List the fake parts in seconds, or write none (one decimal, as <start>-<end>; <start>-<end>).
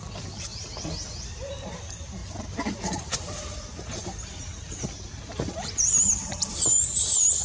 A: 0.0-0.5; 1.3-2.2; 2.7-7.4